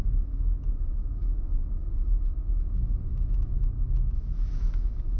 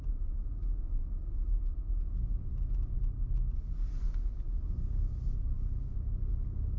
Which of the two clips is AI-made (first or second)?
first